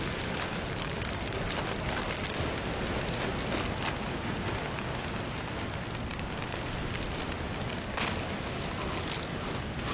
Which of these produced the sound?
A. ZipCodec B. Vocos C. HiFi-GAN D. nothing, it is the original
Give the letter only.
D